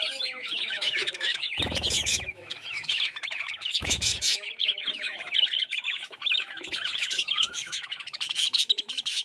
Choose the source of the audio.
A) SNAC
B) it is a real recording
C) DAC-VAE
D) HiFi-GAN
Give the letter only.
C